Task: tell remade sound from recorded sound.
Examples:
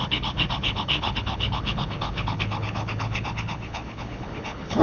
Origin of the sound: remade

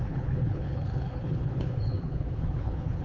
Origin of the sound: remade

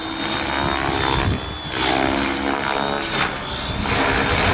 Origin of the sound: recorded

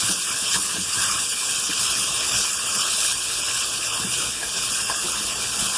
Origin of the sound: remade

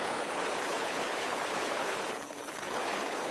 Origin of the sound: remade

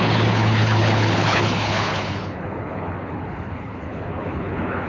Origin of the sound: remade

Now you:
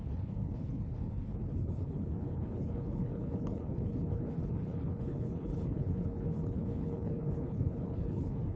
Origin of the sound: remade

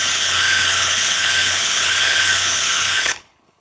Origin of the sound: remade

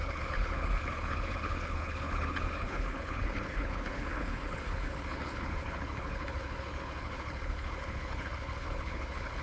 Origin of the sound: remade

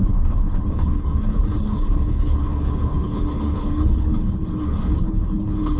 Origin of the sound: remade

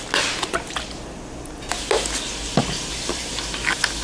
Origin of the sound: recorded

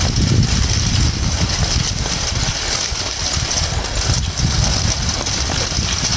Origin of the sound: recorded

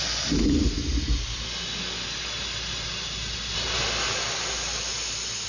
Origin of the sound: recorded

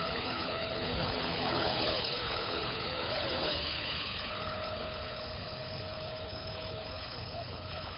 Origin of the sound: remade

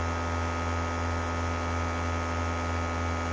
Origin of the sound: recorded